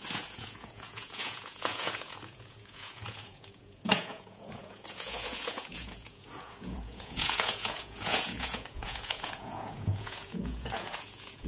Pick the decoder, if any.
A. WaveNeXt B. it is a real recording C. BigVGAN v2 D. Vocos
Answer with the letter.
D